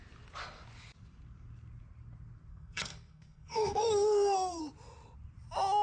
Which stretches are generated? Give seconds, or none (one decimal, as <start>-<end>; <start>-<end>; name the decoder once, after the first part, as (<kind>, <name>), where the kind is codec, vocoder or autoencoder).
2.5-4.6 (codec, SNAC)